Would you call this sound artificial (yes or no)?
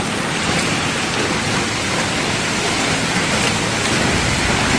yes